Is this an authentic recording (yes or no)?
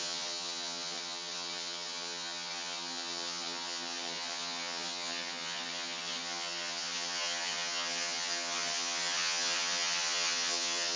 no